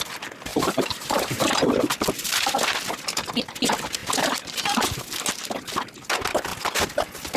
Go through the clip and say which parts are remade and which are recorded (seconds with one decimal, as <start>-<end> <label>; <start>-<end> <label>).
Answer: 0.0-0.5 recorded; 0.5-1.7 remade; 1.7-7.4 recorded